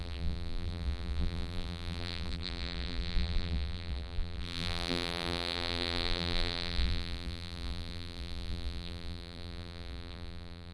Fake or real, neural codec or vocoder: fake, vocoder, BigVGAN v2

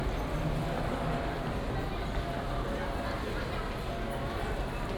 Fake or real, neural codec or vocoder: real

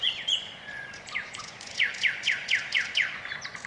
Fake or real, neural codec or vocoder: fake, vocoder, Vocos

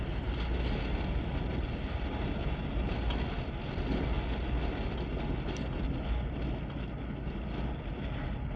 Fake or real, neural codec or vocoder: real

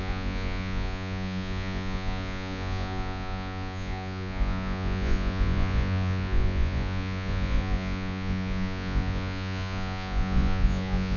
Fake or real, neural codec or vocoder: fake, vocoder, Vocos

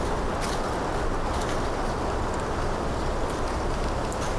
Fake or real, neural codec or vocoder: real